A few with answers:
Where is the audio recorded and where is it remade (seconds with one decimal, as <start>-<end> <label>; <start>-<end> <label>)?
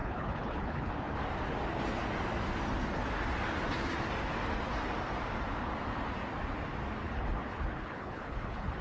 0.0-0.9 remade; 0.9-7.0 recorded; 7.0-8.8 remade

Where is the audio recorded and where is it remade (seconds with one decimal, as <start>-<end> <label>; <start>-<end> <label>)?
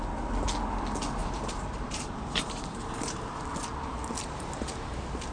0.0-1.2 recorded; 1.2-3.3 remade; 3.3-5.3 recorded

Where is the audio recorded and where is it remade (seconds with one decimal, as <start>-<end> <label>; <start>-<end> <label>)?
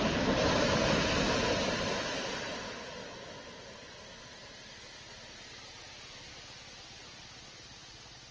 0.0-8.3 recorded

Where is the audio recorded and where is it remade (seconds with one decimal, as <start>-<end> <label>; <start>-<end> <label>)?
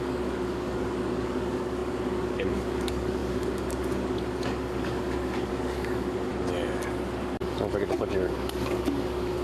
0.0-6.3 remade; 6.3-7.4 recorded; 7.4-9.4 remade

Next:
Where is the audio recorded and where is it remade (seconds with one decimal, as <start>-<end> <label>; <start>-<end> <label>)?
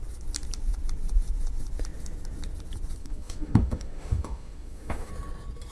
0.0-3.0 recorded; 3.0-5.1 remade; 5.1-5.7 recorded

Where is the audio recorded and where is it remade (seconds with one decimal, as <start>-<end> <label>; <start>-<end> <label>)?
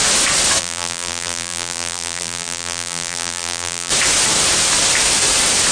0.0-0.6 recorded; 0.6-3.9 remade; 3.9-5.7 recorded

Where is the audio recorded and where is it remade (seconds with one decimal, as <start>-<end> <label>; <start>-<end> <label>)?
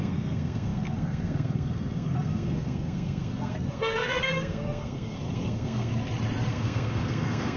0.0-5.9 remade; 5.9-6.5 recorded; 6.5-7.6 remade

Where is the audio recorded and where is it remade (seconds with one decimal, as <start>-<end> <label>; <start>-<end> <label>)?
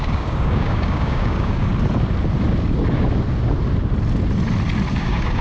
0.0-1.7 remade; 1.7-4.9 recorded; 4.9-5.4 remade